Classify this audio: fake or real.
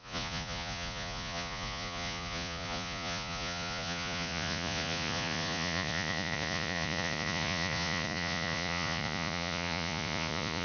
fake